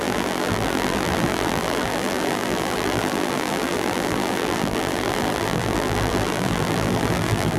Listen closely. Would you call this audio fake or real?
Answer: fake